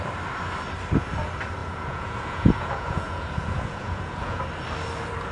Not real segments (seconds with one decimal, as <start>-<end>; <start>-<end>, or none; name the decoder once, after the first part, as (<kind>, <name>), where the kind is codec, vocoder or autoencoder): 1.6-4.4 (vocoder, Vocos)